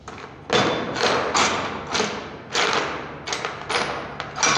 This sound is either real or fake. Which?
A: real